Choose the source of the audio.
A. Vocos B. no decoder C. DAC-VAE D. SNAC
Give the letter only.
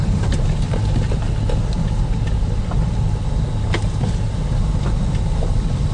B